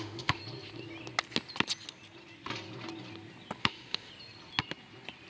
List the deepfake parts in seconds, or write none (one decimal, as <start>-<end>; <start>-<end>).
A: 0.0-0.4; 3.6-4.1